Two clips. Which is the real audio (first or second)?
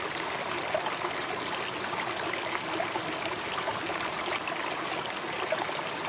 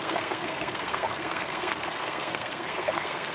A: first